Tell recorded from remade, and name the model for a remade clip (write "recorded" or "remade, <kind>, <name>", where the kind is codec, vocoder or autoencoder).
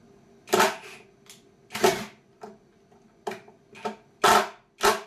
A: recorded